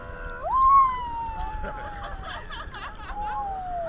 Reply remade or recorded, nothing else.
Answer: recorded